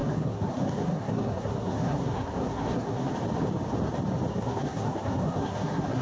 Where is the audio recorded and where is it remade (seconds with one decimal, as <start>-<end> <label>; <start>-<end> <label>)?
0.0-3.1 remade; 3.1-4.3 recorded; 4.3-6.0 remade